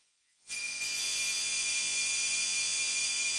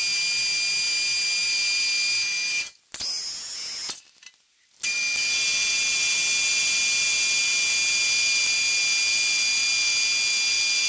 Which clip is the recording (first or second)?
second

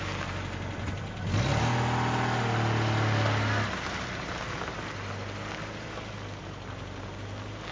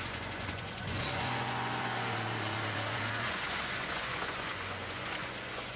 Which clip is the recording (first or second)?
first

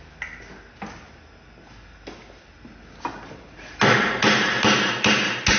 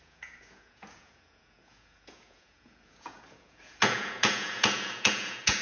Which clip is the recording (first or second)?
first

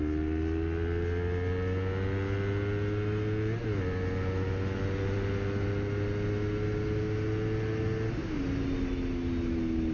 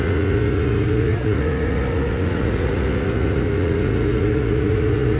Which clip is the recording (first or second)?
first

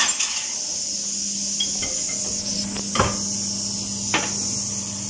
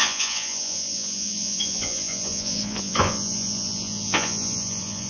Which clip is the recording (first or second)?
first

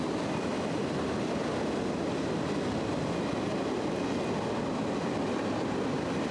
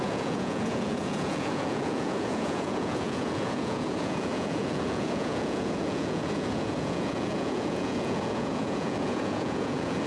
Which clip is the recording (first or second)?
first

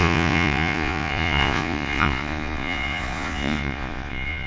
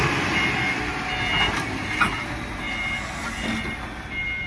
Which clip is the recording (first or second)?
second